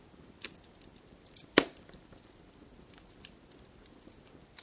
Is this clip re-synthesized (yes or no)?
no